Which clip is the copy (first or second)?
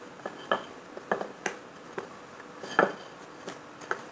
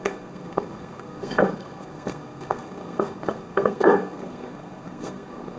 second